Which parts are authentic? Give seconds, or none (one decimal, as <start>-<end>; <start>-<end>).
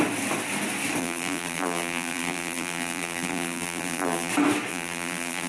0.0-1.0; 4.3-4.7